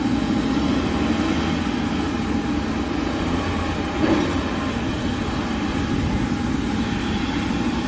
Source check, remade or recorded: recorded